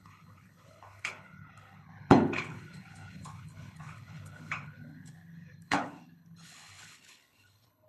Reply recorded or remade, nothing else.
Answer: remade